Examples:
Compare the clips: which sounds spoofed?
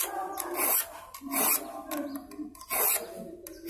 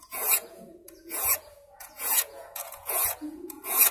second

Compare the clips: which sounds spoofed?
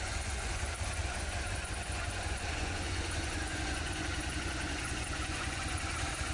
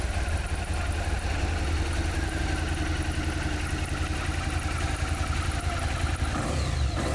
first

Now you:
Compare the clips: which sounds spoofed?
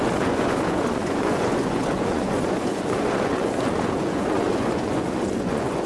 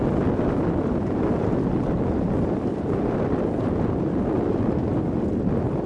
first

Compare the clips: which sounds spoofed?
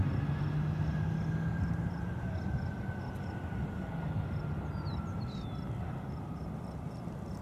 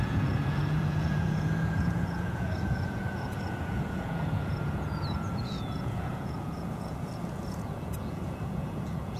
second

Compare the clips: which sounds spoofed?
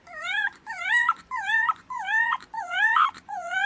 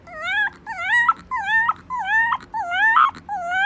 first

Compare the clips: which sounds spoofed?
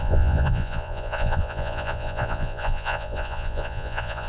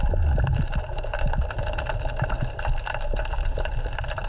first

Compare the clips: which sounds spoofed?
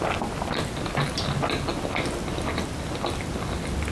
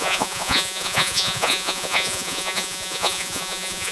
second